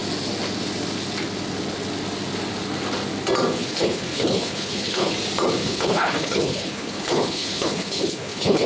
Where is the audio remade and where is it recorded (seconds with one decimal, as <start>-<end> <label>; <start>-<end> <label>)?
0.0-3.6 recorded; 3.6-5.1 remade; 5.1-5.6 recorded; 5.6-8.7 remade